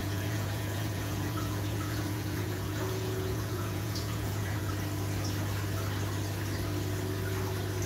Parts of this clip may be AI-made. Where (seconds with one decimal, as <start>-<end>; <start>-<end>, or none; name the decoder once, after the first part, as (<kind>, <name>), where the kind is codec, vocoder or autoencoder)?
0.0-4.7 (vocoder, Vocos)